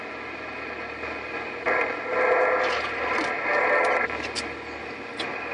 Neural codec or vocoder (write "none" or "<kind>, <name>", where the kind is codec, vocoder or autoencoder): none